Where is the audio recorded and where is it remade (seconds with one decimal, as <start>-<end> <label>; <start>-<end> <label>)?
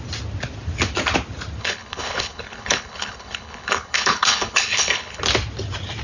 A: 0.0-1.6 recorded; 1.6-5.2 remade; 5.2-6.0 recorded